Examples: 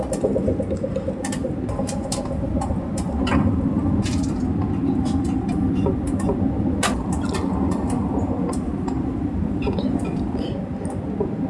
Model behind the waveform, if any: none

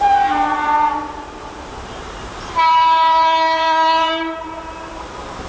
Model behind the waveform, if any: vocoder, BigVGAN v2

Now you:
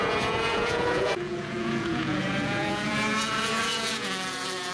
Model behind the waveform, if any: vocoder, Vocos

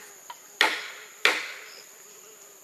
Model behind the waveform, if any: none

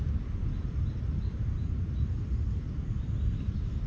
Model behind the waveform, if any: none